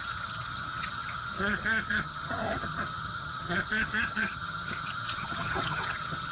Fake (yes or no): yes